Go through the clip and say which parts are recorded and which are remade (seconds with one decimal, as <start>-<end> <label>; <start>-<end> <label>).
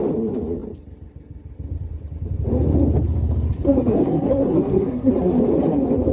0.0-3.8 recorded; 3.8-5.1 remade; 5.1-6.1 recorded